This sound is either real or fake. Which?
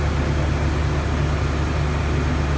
real